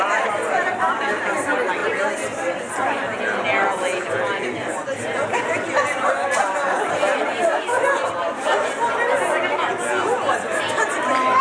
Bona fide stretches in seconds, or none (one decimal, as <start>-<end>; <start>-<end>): 0.0-11.4